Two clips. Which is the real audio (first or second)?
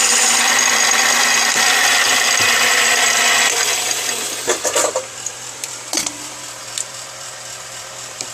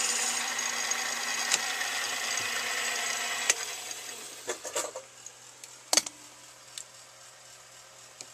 second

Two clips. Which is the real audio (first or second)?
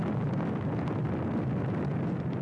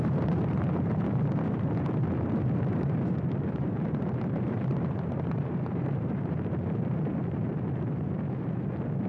first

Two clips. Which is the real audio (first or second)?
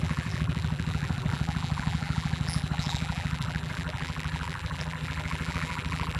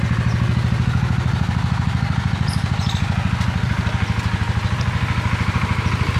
second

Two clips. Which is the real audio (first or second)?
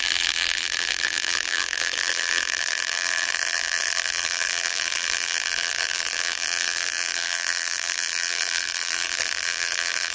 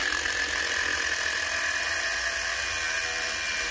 second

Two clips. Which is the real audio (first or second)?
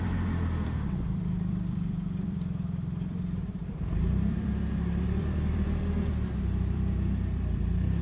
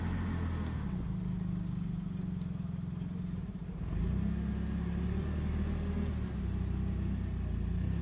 second